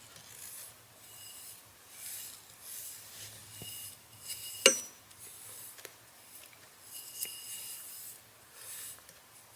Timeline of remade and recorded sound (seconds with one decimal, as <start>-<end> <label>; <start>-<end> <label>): 0.0-9.6 recorded

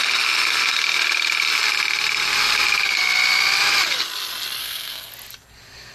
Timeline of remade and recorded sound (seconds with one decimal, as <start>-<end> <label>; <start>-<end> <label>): 0.0-4.6 recorded; 4.6-5.1 remade; 5.1-5.9 recorded

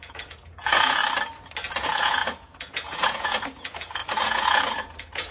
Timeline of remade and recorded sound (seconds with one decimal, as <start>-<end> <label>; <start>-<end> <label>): 0.0-1.0 remade; 1.0-1.8 recorded; 1.8-5.3 remade

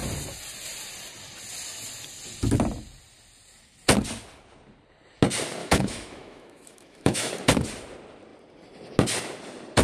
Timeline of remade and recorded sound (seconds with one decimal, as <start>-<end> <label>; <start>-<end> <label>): 0.0-5.6 recorded; 5.6-7.3 remade; 7.3-9.8 recorded

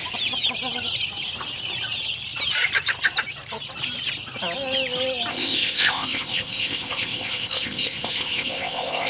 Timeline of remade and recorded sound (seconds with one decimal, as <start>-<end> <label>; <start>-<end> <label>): 0.0-5.3 recorded; 5.3-9.1 remade

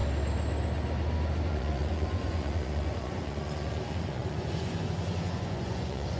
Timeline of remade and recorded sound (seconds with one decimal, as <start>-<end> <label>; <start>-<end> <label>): 0.0-1.5 recorded; 1.5-6.2 remade

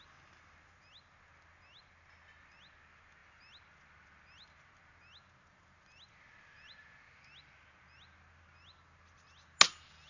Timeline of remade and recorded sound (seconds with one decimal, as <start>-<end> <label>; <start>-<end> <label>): 0.0-10.1 recorded